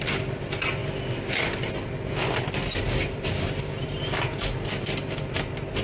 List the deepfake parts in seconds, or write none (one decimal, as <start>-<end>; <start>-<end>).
none